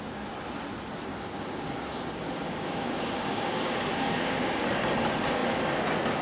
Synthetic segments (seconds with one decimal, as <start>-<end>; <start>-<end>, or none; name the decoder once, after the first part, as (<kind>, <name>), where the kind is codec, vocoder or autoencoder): 1.1-4.8 (codec, DAC)